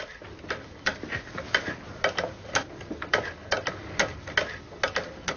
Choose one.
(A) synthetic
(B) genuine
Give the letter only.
B